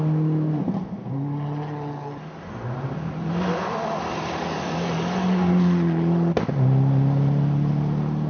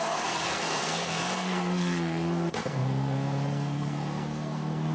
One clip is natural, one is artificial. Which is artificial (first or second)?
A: second